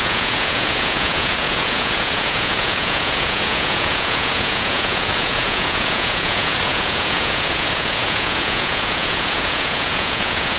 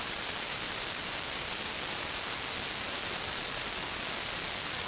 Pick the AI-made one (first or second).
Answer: first